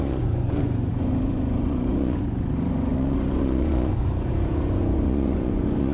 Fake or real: fake